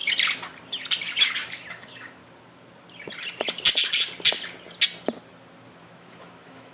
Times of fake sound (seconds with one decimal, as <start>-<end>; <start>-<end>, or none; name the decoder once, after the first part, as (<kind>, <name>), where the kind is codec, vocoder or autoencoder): 1.2-2.2 (autoencoder, DAC-VAE); 5.8-6.7